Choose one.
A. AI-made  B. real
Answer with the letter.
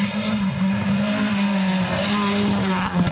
B